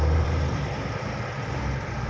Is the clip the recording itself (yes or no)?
no